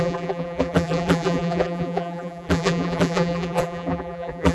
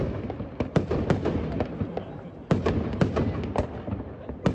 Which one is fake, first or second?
first